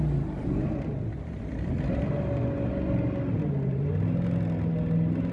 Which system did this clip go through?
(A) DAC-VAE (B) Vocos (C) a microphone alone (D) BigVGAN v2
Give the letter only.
C